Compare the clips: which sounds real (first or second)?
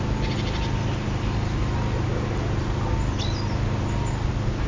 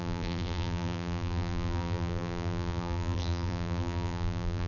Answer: first